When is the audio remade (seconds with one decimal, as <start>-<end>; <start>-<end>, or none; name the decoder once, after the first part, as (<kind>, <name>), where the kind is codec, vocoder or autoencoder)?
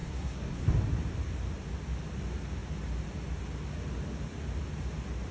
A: 0.0-0.7 (codec, SNAC)